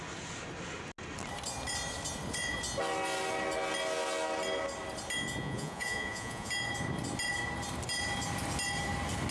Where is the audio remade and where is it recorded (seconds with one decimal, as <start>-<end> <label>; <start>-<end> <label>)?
0.0-5.4 recorded; 5.4-6.5 remade; 6.5-9.3 recorded